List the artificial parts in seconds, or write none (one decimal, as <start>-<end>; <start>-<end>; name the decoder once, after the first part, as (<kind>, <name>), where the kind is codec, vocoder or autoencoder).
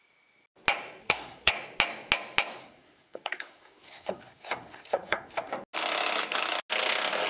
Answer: 1.0-1.5 (codec, SNAC); 2.6-5.5